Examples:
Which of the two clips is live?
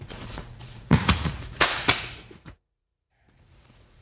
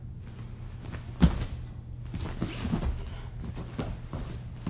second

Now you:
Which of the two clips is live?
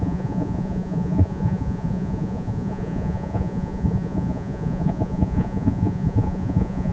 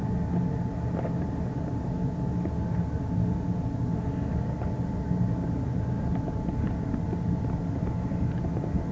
second